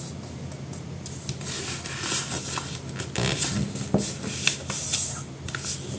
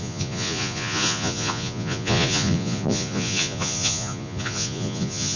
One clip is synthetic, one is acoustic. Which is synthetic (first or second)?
second